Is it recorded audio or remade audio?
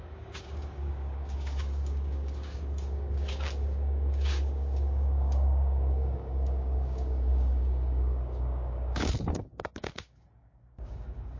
remade